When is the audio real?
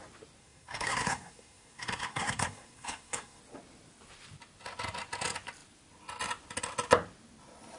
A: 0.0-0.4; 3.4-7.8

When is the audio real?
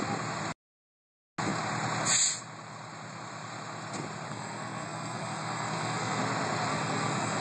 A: 0.0-4.3; 6.2-6.7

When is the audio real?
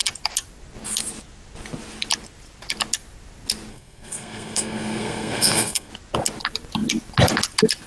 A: 0.0-3.7; 5.9-7.9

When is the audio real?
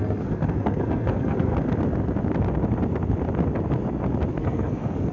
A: 1.5-4.3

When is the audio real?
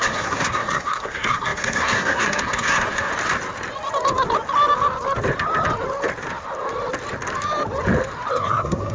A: 3.1-8.3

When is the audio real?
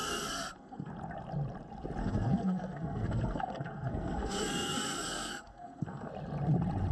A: 0.9-2.0; 6.1-6.9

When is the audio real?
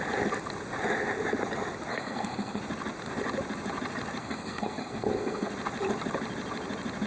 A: 0.0-1.9; 2.6-4.2; 5.5-7.1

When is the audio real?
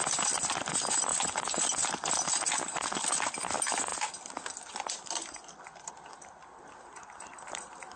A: 0.0-8.0